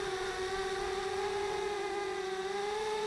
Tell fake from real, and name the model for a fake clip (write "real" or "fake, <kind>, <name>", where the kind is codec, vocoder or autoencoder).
fake, vocoder, Vocos